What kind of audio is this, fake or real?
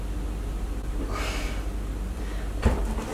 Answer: fake